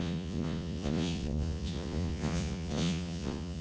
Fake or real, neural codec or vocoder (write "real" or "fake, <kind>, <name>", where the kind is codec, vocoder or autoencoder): fake, vocoder, Vocos